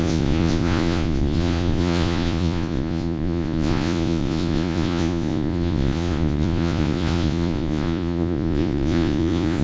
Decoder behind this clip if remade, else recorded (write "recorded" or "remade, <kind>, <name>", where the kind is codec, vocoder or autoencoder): remade, vocoder, Vocos